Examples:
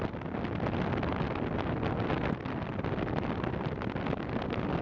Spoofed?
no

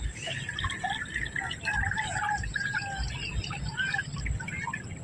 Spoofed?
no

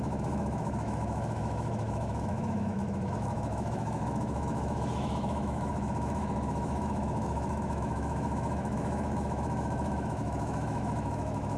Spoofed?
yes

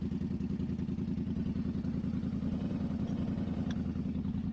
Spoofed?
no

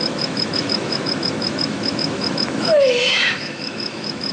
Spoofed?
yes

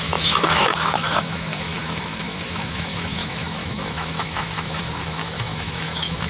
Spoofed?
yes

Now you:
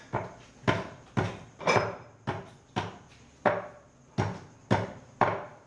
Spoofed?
no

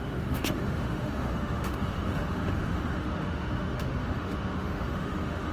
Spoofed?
yes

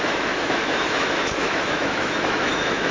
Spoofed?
yes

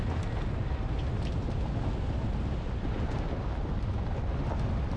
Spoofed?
no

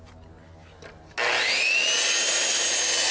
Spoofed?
no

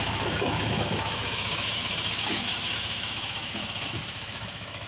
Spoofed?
yes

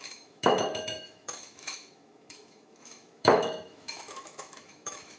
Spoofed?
yes